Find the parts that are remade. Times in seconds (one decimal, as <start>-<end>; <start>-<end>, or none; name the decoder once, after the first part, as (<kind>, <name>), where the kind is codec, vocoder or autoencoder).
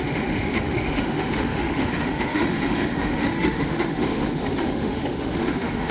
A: 0.0-5.9 (autoencoder, DAC-VAE)